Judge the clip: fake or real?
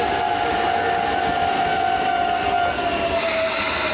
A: real